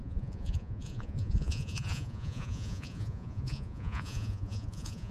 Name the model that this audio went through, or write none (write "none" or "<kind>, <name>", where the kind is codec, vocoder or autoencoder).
vocoder, Vocos